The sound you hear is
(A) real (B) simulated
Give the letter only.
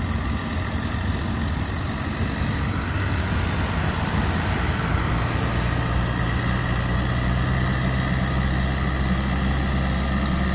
A